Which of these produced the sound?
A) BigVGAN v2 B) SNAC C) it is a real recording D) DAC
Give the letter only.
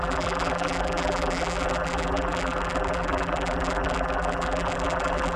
A